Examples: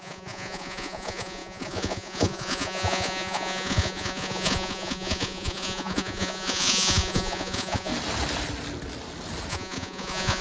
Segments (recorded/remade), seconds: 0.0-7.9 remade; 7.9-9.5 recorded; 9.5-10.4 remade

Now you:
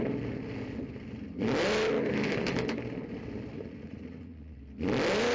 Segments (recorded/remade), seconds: 0.0-3.5 recorded; 3.5-4.6 remade; 4.6-5.3 recorded

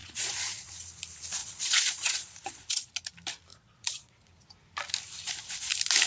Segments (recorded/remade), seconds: 0.0-0.7 remade; 0.7-1.4 recorded; 1.4-2.9 remade; 2.9-3.5 recorded; 3.5-4.2 remade; 4.2-6.1 recorded